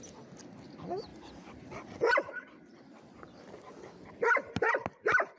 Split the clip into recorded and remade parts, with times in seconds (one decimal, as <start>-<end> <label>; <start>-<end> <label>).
0.0-5.4 recorded